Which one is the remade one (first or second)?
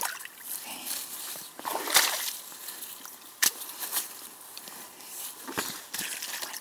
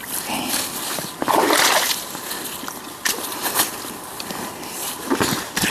first